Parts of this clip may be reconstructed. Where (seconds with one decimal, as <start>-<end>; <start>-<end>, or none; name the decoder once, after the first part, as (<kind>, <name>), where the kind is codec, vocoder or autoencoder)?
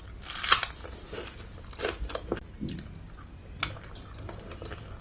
none